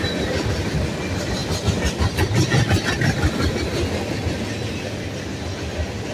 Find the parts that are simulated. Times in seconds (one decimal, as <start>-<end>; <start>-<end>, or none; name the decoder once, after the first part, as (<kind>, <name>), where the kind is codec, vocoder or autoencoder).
none